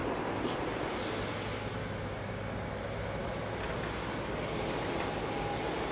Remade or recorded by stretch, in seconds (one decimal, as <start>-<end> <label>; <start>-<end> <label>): 0.0-3.2 recorded; 3.2-5.0 remade; 5.0-5.9 recorded